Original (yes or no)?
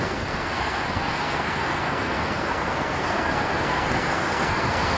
no